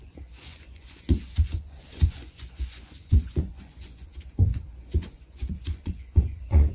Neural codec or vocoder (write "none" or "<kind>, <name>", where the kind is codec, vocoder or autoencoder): vocoder, Vocos